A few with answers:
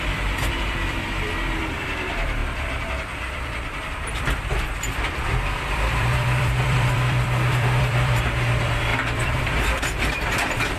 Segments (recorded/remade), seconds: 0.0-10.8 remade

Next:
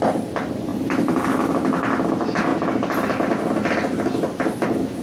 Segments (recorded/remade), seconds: 0.0-5.0 recorded

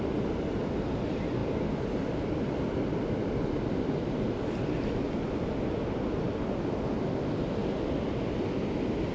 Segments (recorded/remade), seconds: 0.0-9.1 recorded

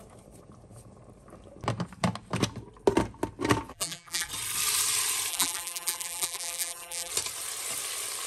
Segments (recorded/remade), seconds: 0.0-3.7 recorded; 3.7-4.3 remade; 4.3-5.3 recorded; 5.3-7.1 remade; 7.1-8.3 recorded

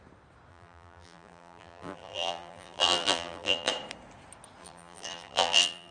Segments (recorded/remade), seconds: 0.0-0.5 recorded; 0.5-3.7 remade; 3.7-4.6 recorded; 4.6-5.9 remade

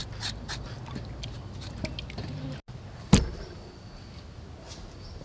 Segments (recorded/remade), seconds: 0.0-5.2 recorded

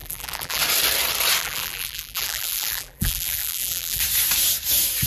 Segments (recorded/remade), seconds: 0.0-0.6 remade; 0.6-1.4 recorded; 1.4-4.0 remade; 4.0-5.1 recorded

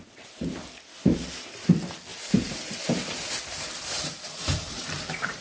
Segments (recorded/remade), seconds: 0.0-2.1 recorded; 2.1-5.4 remade